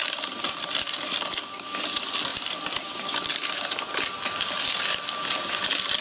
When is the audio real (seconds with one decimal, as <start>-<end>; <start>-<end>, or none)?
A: none